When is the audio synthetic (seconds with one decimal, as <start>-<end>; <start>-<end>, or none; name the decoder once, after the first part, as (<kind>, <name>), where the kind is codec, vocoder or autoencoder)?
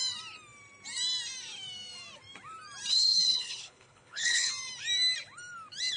2.9-4.5 (codec, HILCodec)